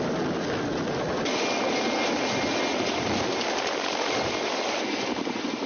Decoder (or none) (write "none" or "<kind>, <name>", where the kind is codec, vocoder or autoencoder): none